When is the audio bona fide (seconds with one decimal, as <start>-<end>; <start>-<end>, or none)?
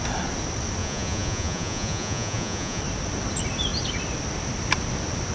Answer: 0.0-0.8; 2.8-5.3